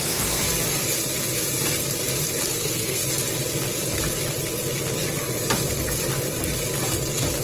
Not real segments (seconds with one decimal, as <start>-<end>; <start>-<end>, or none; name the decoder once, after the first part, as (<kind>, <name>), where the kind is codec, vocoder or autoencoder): 0.0-0.4 (codec, SNAC); 2.5-3.0